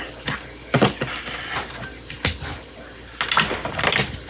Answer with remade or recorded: recorded